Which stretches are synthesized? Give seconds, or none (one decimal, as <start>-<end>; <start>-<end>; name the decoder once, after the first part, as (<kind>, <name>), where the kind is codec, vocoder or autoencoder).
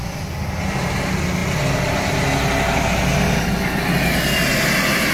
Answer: none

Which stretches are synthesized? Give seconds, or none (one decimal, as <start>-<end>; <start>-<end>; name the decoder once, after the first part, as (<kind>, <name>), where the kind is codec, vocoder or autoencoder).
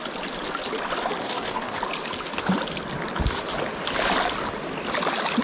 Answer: 1.2-1.8 (codec, DAC)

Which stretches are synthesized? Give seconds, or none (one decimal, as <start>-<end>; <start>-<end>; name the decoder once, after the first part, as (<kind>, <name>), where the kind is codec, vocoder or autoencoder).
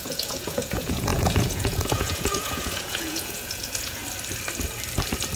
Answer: 0.0-4.0 (vocoder, Vocos)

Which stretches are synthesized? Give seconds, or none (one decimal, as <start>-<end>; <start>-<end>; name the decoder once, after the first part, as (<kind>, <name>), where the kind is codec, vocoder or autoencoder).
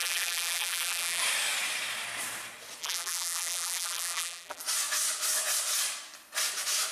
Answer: 0.0-1.2 (vocoder, BigVGAN v2); 2.8-4.6